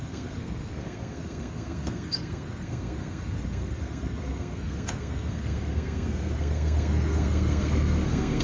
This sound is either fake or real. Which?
fake